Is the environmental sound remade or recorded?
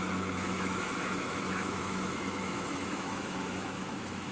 remade